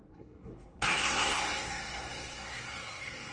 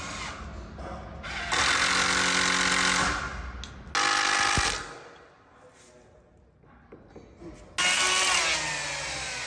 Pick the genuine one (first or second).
second